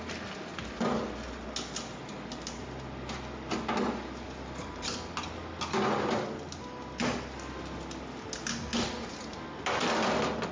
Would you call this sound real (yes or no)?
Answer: yes